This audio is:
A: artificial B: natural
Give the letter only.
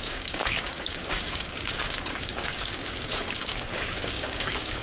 A